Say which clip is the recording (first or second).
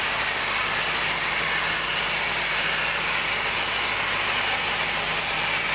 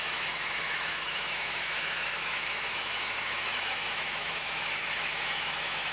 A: first